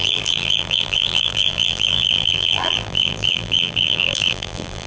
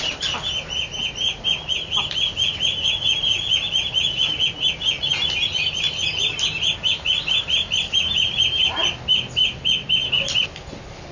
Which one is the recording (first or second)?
second